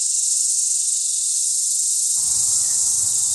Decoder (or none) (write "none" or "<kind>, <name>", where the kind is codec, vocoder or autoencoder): none